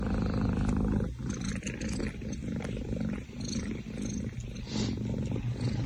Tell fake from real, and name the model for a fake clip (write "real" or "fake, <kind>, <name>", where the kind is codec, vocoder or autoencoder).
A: real